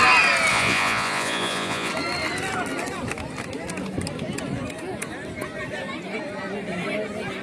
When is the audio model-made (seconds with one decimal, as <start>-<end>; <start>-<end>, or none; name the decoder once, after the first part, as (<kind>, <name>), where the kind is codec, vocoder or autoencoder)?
0.5-1.9 (vocoder, Vocos)

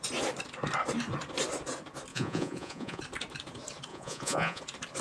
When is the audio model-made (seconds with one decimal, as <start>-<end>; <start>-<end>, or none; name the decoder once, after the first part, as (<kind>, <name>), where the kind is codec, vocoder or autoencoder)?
2.1-3.0 (vocoder, Vocos); 3.9-4.6

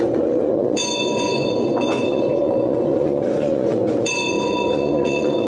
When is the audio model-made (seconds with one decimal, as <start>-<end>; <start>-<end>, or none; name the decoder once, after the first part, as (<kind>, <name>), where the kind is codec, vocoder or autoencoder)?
0.0-5.5 (vocoder, Vocos)

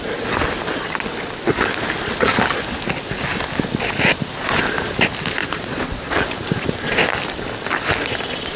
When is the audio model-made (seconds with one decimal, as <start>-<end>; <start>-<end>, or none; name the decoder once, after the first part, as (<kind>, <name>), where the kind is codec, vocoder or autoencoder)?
5.4-6.2 (vocoder, Vocos)

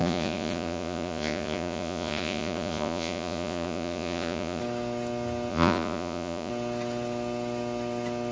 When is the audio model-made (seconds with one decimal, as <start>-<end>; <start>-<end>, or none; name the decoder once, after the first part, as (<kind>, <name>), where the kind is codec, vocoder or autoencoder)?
0.0-4.6 (vocoder, Vocos); 5.5-6.5